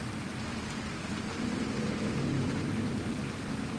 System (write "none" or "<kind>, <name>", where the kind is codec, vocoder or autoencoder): none